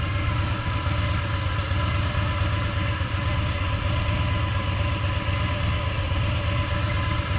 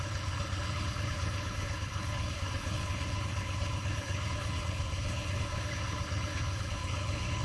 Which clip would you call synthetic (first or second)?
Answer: second